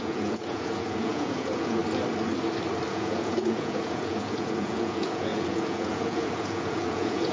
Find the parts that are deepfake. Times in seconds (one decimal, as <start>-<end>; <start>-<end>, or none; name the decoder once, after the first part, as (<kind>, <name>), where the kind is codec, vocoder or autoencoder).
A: 0.0-1.8 (vocoder, Vocos); 2.9-7.3